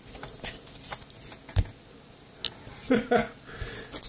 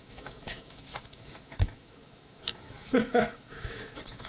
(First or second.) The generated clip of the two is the second